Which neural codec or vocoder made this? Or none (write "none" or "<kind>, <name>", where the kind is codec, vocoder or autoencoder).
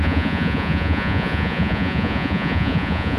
vocoder, Vocos